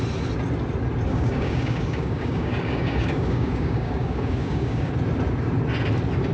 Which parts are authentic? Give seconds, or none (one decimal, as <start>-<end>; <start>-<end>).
0.0-1.1; 4.9-6.3